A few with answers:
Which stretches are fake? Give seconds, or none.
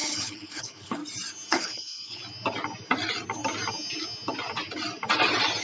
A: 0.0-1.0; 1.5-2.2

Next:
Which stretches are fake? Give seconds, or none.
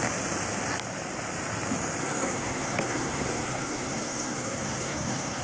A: 2.0-5.4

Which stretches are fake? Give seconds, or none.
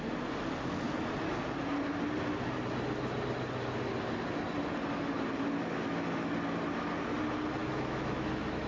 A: 7.6-8.7